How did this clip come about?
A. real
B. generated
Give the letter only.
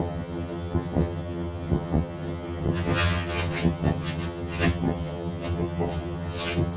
B